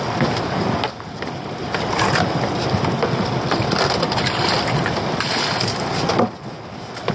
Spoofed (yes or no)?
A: no